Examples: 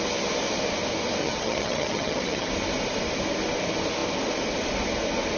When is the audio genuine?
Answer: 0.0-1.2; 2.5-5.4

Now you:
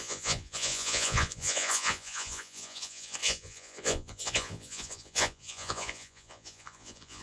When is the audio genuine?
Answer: none

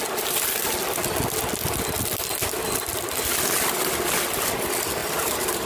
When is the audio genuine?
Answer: 0.0-5.0